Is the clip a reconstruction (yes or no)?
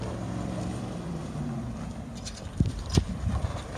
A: yes